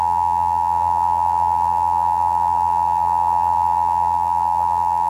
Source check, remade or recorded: remade